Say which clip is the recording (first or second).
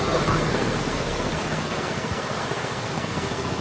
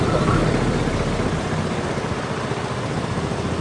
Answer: second